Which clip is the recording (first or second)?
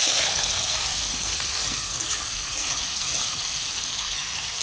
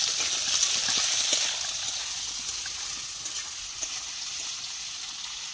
second